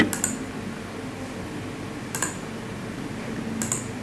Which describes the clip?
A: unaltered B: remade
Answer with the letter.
A